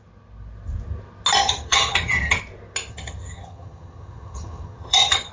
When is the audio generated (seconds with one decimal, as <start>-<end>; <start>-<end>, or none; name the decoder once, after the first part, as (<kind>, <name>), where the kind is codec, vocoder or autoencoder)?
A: 1.4-2.4 (vocoder, HiFi-GAN); 2.9-5.3